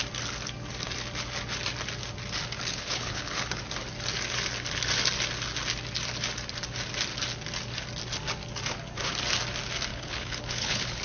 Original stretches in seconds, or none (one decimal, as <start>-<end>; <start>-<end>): 0.0-2.7; 3.6-9.9